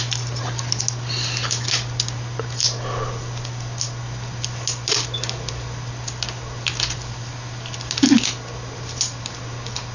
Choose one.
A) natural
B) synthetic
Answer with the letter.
A